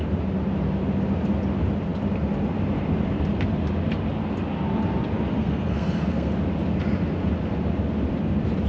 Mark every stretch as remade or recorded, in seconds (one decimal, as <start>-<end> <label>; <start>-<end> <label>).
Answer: 0.0-5.4 recorded; 5.4-6.3 remade; 6.3-8.7 recorded